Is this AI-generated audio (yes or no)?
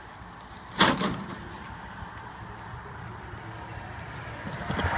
yes